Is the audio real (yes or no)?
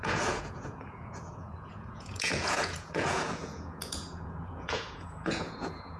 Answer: no